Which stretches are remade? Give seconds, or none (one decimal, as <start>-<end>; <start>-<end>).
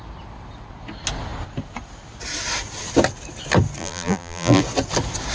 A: 3.8-4.6